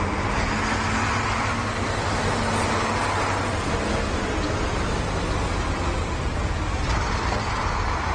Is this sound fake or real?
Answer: real